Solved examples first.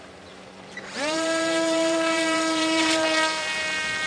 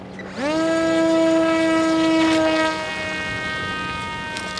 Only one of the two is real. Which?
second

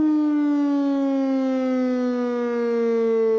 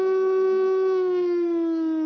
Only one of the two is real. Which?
first